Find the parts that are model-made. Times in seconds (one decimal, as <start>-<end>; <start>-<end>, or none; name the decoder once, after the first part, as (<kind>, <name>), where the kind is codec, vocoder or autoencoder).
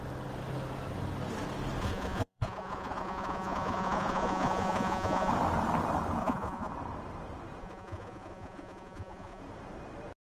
1.8-5.3 (vocoder, Vocos); 6.2-6.7; 7.6-9.4